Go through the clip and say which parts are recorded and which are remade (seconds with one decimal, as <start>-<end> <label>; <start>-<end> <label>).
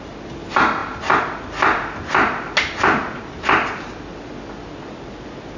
0.0-5.6 recorded